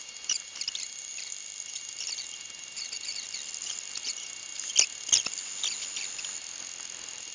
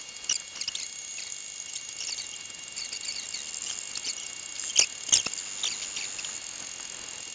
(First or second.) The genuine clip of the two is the second